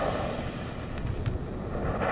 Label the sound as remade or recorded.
recorded